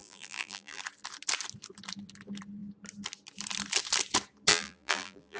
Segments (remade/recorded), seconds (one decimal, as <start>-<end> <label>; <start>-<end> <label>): 0.0-0.8 remade; 0.8-4.5 recorded; 4.5-5.4 remade